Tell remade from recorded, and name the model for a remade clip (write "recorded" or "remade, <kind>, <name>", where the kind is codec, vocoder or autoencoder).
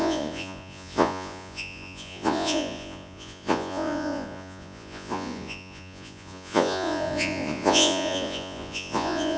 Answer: remade, vocoder, Vocos